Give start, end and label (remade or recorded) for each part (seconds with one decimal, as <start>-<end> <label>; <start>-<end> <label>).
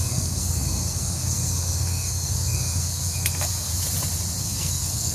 0.0-3.7 remade; 3.7-4.4 recorded; 4.4-5.1 remade